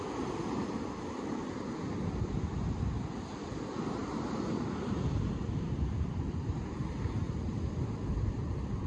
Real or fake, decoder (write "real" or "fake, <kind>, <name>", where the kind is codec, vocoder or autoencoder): real